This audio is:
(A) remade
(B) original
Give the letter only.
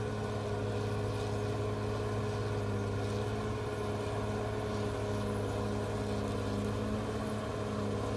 B